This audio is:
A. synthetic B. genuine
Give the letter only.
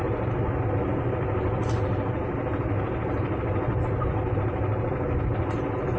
B